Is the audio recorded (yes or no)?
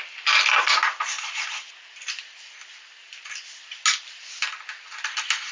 yes